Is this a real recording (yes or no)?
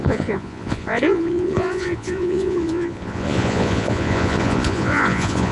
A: no